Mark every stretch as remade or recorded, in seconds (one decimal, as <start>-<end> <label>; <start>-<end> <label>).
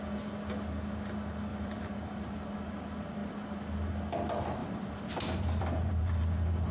0.0-1.5 recorded; 1.5-2.3 remade; 2.3-4.6 recorded; 4.6-6.3 remade; 6.3-6.7 recorded